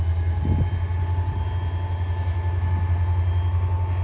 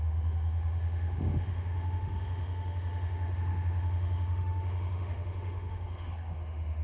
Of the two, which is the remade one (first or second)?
second